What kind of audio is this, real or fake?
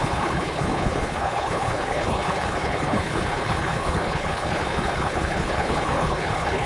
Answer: fake